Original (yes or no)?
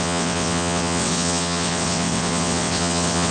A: no